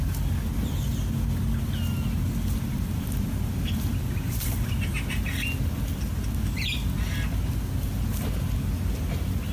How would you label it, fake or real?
real